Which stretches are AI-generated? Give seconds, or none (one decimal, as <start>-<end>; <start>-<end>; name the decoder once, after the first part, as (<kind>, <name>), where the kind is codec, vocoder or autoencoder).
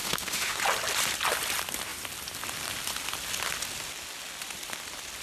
0.0-0.6 (autoencoder, DAC-VAE)